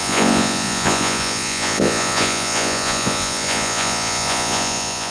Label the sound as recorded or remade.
remade